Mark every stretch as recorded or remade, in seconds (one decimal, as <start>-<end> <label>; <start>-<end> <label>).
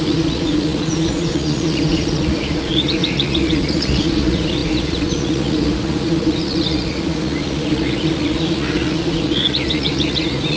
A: 0.0-10.6 remade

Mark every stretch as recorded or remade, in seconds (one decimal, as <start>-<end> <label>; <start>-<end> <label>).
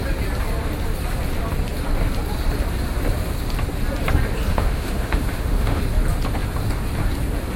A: 0.0-4.5 recorded; 4.5-5.8 remade; 5.8-7.6 recorded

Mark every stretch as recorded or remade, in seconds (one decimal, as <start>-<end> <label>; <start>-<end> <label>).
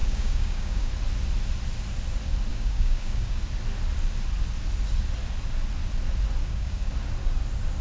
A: 0.0-0.9 remade; 0.9-2.5 recorded; 2.5-3.4 remade; 3.4-6.4 recorded; 6.4-6.9 remade; 6.9-7.8 recorded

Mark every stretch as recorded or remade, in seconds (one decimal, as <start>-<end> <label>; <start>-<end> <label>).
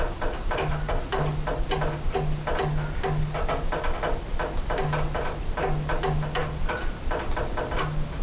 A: 0.0-8.2 recorded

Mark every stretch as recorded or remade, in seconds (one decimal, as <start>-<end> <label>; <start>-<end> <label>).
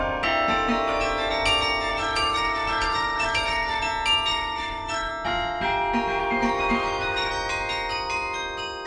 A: 0.0-1.9 recorded; 1.9-3.8 remade; 3.8-4.3 recorded; 4.3-5.1 remade; 5.1-6.2 recorded; 6.2-7.3 remade; 7.3-8.9 recorded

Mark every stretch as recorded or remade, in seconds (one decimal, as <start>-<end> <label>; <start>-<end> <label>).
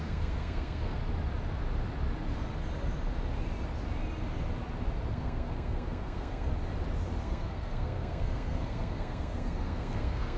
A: 0.0-1.0 remade; 1.0-5.1 recorded; 5.1-6.5 remade; 6.5-7.2 recorded; 7.2-10.4 remade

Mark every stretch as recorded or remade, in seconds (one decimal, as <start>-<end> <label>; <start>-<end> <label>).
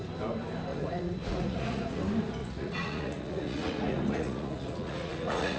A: 0.0-0.7 recorded; 0.7-2.0 remade; 2.0-2.4 recorded; 2.4-5.6 remade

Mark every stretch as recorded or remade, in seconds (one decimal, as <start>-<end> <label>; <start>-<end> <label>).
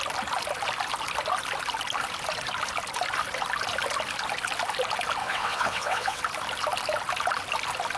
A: 0.0-5.2 recorded; 5.2-6.2 remade; 6.2-8.0 recorded